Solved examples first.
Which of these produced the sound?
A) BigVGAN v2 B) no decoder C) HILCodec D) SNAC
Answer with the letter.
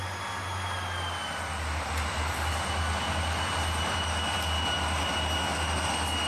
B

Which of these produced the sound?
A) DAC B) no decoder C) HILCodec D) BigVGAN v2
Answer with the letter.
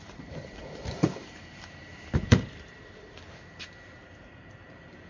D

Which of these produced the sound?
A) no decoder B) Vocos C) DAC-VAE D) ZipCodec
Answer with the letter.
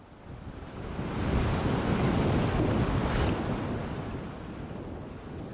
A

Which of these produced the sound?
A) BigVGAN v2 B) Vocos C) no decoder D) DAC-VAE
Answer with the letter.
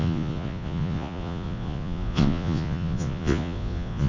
B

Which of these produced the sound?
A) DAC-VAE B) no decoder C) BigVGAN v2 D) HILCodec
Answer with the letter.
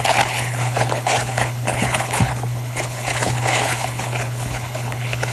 D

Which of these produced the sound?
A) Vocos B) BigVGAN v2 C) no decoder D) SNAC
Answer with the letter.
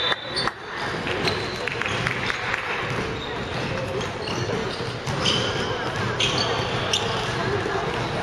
C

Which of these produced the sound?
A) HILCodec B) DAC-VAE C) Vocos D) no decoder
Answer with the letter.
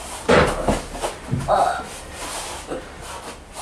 D